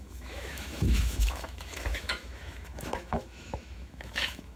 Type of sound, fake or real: fake